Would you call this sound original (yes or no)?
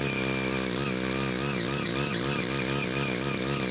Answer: yes